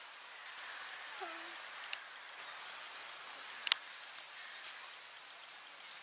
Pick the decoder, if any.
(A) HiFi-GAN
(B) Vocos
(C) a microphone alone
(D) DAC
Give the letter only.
C